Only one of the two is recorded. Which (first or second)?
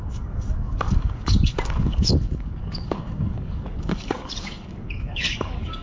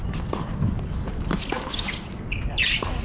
second